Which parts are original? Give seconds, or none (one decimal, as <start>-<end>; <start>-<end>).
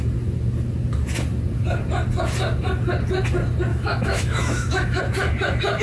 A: 0.0-3.7; 5.0-5.8